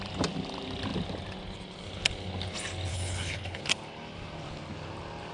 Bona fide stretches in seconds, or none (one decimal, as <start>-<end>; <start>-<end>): 0.0-2.9; 3.6-5.3

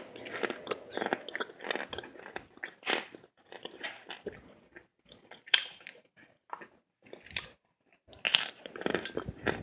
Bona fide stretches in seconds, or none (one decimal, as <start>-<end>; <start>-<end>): 0.0-4.9; 6.5-8.9